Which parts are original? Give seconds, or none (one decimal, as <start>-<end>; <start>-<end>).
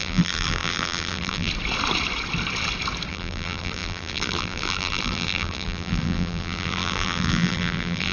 1.5-3.1